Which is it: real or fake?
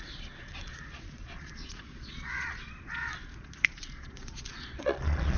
fake